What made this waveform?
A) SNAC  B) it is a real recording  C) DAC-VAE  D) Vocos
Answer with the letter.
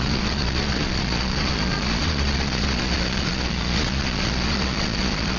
D